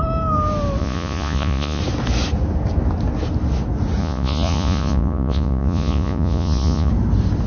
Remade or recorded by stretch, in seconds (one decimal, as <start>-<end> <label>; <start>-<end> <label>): 0.0-0.8 recorded; 0.8-1.8 remade; 1.8-4.0 recorded; 4.0-6.9 remade; 6.9-7.5 recorded